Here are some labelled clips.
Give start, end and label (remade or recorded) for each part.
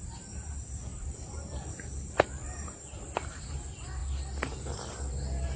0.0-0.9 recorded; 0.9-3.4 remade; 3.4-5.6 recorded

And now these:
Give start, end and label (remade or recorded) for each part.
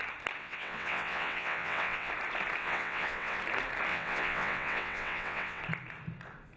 0.0-0.4 recorded; 0.4-2.1 remade; 2.1-2.6 recorded; 2.6-3.4 remade; 3.4-3.9 recorded; 3.9-5.6 remade; 5.6-6.6 recorded